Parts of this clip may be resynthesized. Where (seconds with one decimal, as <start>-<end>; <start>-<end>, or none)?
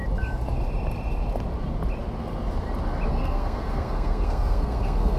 3.1-5.2